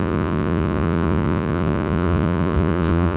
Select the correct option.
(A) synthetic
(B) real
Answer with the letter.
A